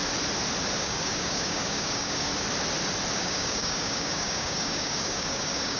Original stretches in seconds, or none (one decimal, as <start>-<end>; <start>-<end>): 0.0-0.8; 2.3-3.2